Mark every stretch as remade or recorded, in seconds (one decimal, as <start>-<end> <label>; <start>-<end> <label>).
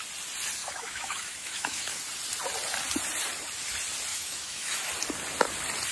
0.0-0.6 recorded; 0.6-2.0 remade; 2.0-4.1 recorded; 4.1-4.9 remade; 4.9-5.9 recorded